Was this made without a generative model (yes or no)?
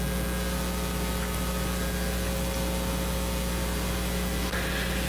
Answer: yes